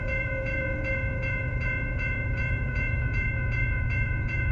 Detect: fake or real fake